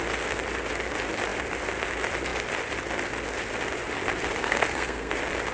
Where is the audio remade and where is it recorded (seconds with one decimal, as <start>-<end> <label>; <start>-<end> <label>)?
0.0-4.4 recorded; 4.4-5.1 remade; 5.1-5.5 recorded

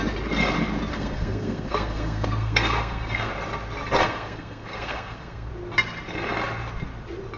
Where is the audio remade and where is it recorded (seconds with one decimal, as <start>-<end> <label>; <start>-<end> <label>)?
0.0-0.9 recorded; 0.9-3.3 remade; 3.3-4.0 recorded; 4.0-5.5 remade; 5.5-7.4 recorded

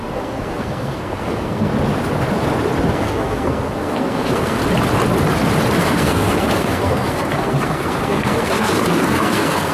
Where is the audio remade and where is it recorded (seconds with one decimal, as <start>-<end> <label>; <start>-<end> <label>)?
0.0-1.7 remade; 1.7-2.9 recorded; 2.9-4.6 remade; 4.6-5.8 recorded; 5.8-9.7 remade